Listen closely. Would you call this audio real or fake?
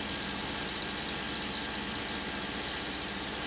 real